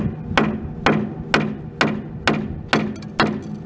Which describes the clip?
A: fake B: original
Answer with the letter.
B